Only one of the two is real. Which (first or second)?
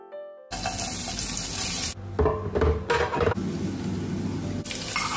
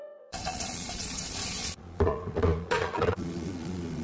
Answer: first